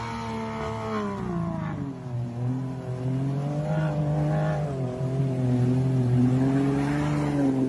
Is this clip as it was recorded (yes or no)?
yes